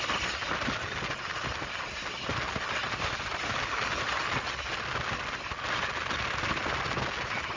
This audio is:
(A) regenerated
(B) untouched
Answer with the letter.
B